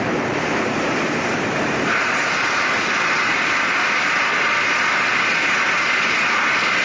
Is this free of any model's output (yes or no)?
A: yes